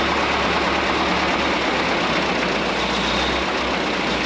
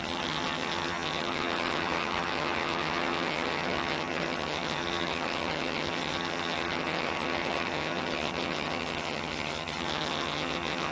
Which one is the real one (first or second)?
first